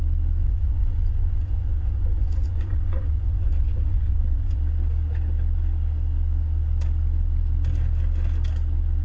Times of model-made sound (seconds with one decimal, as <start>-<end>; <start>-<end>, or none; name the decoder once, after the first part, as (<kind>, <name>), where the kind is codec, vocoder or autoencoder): 0.4-4.6 (vocoder, Vocos)